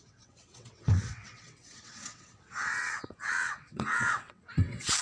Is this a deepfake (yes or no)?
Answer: yes